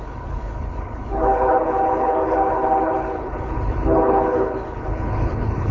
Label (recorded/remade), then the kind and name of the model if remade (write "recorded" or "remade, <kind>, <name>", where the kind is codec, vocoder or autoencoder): remade, codec, HILCodec